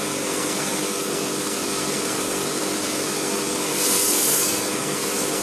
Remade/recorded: remade